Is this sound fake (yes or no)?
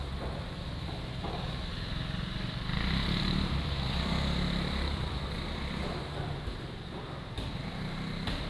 yes